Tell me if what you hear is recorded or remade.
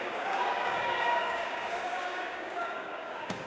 remade